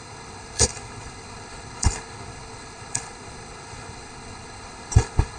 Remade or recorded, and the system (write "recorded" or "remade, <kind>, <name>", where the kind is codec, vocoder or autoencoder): remade, codec, HILCodec